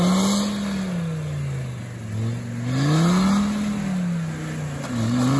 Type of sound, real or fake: real